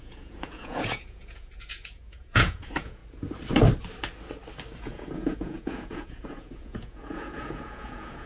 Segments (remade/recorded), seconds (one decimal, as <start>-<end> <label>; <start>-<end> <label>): 0.0-3.0 remade; 3.0-4.8 recorded; 4.8-8.3 remade